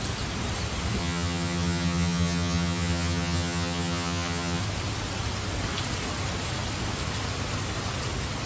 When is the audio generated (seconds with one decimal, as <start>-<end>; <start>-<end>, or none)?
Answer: 1.0-4.6